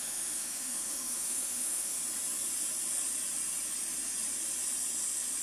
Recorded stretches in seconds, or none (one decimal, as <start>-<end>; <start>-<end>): 2.0-5.4